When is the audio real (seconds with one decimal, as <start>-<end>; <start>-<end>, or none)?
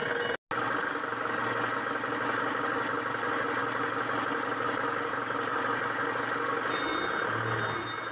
0.0-8.1